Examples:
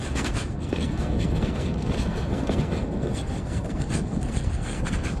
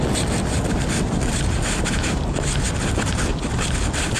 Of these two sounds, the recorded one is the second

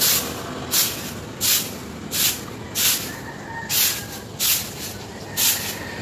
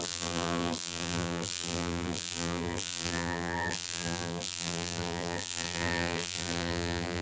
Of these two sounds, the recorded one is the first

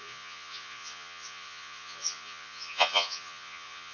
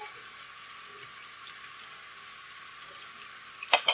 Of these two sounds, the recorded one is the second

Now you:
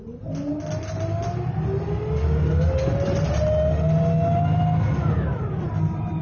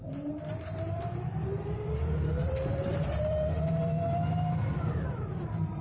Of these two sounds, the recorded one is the first